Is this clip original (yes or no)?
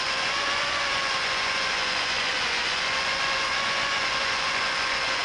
no